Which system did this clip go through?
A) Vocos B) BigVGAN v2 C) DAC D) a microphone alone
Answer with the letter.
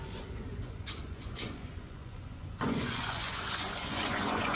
A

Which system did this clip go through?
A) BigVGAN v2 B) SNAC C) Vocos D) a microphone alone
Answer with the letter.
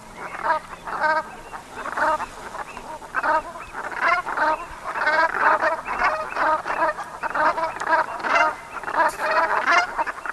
D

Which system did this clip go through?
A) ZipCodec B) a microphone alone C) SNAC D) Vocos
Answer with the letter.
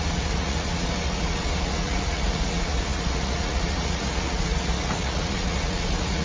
D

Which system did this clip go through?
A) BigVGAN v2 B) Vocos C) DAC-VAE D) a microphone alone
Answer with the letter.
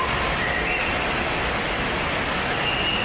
D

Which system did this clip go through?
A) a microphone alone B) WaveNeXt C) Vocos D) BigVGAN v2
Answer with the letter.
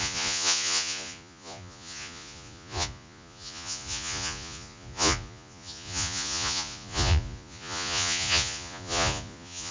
C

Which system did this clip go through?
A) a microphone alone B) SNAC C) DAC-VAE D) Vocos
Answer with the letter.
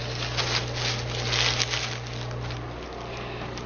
A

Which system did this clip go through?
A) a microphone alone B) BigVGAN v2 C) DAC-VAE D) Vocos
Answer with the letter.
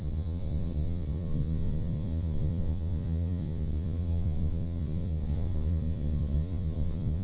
D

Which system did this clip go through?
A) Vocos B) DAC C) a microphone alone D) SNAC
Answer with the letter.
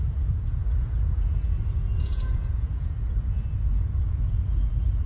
A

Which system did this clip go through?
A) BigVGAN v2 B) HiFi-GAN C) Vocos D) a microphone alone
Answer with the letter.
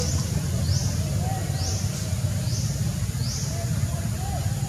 D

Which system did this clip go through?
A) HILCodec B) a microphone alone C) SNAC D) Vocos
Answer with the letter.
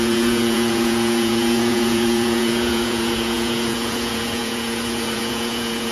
D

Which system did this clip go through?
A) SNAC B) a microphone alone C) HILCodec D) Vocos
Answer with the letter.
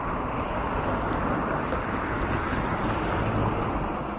B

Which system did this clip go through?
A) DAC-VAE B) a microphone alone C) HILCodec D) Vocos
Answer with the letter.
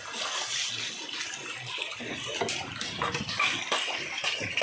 B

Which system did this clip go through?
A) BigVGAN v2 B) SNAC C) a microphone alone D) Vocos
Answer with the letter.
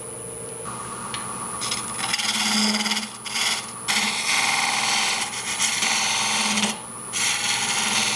C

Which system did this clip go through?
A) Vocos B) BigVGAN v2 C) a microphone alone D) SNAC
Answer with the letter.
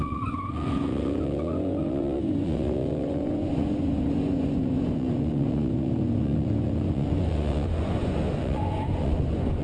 A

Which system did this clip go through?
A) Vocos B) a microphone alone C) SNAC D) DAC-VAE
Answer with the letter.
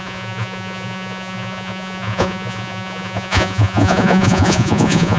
A